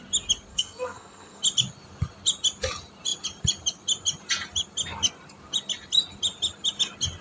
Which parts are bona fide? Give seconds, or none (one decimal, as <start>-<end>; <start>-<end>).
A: 0.0-0.5; 1.4-7.2